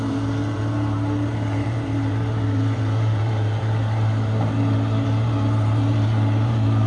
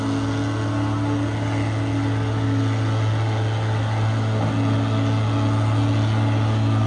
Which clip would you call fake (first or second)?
first